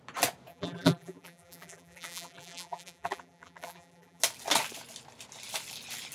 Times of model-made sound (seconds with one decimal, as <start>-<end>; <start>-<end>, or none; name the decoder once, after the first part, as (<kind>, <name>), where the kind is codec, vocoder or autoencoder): 0.5-4.2 (vocoder, BigVGAN v2)